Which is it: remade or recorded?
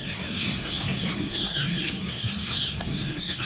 remade